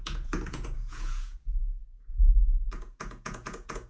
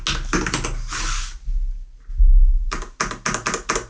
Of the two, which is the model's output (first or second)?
first